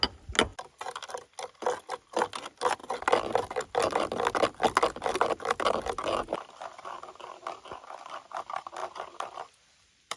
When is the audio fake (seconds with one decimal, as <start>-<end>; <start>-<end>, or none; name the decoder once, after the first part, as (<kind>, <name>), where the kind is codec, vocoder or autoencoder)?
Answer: 8.8-10.2 (vocoder, BigVGAN v2)